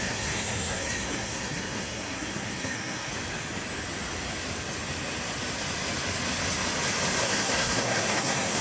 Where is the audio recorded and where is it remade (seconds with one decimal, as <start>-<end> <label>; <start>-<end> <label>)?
0.0-3.1 remade; 3.1-7.2 recorded; 7.2-8.6 remade